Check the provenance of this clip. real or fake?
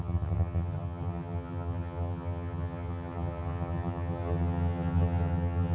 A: fake